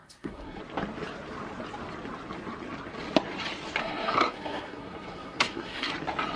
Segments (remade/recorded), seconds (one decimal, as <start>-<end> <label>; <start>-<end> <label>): 0.0-0.6 remade; 0.6-3.8 recorded; 3.8-5.9 remade; 5.9-6.4 recorded